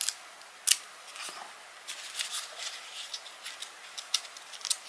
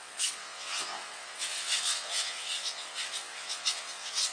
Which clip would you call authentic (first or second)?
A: first